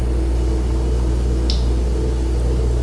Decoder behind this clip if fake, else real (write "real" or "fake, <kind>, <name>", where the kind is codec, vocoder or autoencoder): real